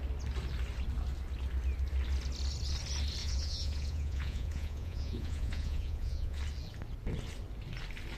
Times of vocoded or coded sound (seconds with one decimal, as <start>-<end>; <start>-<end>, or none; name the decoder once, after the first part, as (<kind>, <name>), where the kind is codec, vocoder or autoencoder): 3.2-6.4 (vocoder, Vocos)